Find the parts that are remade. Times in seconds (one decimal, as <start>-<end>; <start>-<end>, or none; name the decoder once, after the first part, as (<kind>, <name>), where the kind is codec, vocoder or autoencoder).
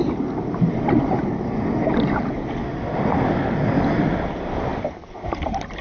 none